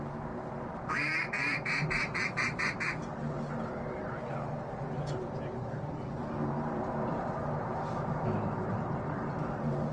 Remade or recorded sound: remade